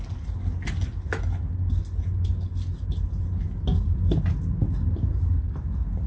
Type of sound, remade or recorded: recorded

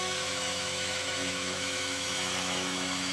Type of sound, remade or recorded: remade